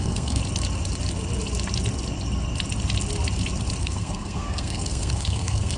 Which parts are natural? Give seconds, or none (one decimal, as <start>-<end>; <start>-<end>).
0.4-3.8